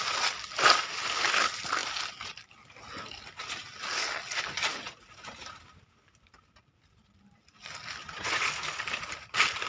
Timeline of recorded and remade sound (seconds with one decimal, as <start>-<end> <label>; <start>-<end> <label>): 0.0-8.0 recorded; 8.0-8.5 remade; 8.5-9.7 recorded